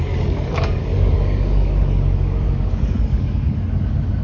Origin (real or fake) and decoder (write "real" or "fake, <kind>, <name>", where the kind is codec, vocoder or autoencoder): fake, codec, DAC